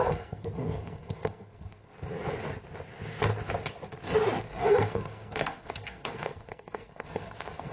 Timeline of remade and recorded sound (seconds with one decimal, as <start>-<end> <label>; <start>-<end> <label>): 0.0-1.9 remade; 1.9-4.4 recorded; 4.4-7.7 remade